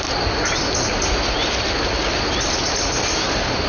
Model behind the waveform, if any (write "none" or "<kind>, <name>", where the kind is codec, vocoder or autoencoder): none